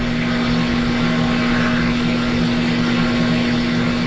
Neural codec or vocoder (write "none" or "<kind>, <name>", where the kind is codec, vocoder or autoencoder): none